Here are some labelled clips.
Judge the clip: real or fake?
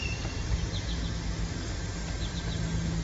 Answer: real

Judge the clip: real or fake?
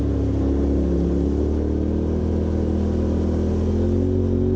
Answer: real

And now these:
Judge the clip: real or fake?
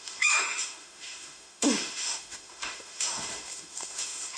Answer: fake